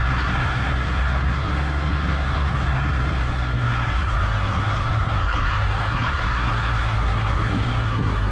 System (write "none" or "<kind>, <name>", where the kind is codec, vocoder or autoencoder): codec, SNAC